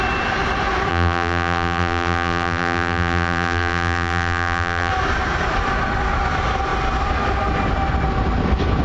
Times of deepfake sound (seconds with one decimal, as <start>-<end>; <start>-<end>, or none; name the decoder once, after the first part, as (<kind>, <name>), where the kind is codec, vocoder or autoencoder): 0.9-4.9 (vocoder, BigVGAN v2)